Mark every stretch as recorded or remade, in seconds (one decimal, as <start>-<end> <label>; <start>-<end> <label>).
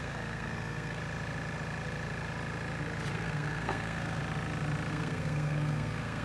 0.0-1.0 remade; 1.0-3.1 recorded; 3.1-4.2 remade; 4.2-4.9 recorded; 4.9-6.2 remade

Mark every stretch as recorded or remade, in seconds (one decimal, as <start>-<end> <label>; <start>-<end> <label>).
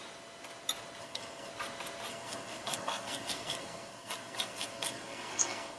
0.0-1.0 recorded; 1.0-1.5 remade; 1.5-2.1 recorded; 2.1-5.8 remade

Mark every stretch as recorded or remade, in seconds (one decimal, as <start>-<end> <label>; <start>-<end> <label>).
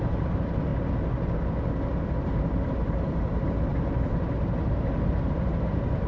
0.0-0.7 remade; 0.7-1.9 recorded; 1.9-6.1 remade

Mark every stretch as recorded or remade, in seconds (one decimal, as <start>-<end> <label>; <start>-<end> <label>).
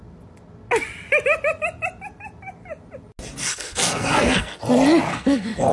0.0-3.4 recorded; 3.4-4.6 remade; 4.6-5.1 recorded; 5.1-5.7 remade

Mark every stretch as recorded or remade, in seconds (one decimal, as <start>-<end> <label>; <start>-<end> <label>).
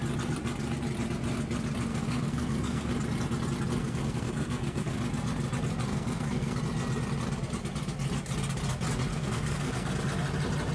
0.0-1.9 recorded; 1.9-2.9 remade; 2.9-3.8 recorded; 3.8-5.0 remade; 5.0-5.9 recorded; 5.9-6.6 remade; 6.6-9.1 recorded; 9.1-9.9 remade; 9.9-10.7 recorded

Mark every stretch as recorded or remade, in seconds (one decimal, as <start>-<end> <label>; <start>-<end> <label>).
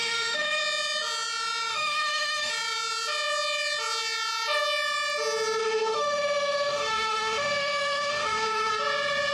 0.0-0.6 remade; 0.6-1.7 recorded; 1.7-2.5 remade; 2.5-5.6 recorded; 5.6-8.7 remade; 8.7-9.3 recorded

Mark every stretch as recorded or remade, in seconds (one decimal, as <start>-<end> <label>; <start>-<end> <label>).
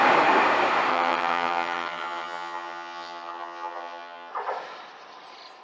0.0-0.9 recorded; 0.9-4.3 remade; 4.3-5.6 recorded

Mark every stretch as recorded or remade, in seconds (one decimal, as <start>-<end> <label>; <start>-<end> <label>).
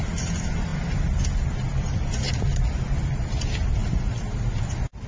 0.0-5.1 recorded